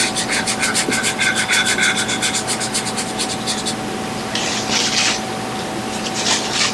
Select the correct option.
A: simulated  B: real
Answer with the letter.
B